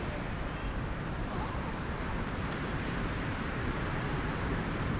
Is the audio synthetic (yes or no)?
yes